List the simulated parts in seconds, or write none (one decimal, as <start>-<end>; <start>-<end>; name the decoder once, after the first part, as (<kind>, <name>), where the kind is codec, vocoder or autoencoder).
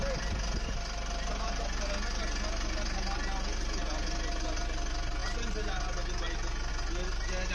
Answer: none